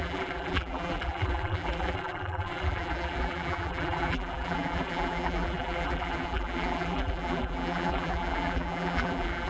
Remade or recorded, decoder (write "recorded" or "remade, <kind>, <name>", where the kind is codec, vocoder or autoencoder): remade, vocoder, BigVGAN v2